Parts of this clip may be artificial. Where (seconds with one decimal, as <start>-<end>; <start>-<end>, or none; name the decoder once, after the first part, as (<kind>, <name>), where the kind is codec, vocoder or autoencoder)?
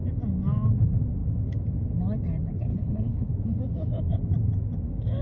2.7-3.3 (codec, HILCodec)